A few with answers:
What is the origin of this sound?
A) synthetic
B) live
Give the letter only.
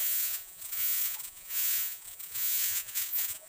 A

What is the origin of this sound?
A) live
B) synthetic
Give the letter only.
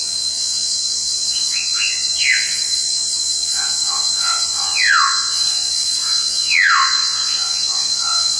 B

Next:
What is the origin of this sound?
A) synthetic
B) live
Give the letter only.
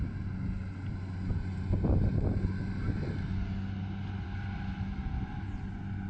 B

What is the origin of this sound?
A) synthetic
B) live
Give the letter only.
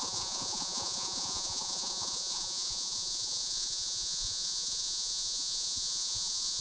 A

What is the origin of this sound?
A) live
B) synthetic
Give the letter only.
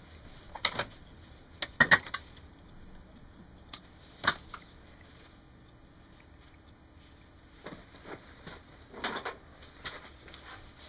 A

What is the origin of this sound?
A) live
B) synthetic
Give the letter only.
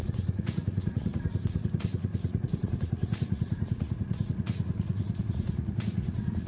B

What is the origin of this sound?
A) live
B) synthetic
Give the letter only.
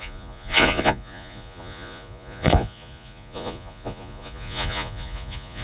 B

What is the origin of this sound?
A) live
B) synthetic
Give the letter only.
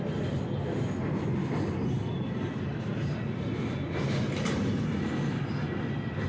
A